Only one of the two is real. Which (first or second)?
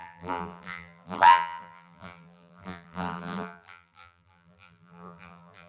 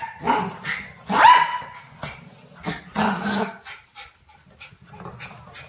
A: second